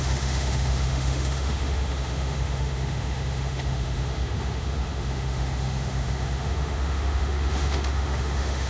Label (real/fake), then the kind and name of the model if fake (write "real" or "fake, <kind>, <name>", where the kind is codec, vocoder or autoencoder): fake, autoencoder, DAC-VAE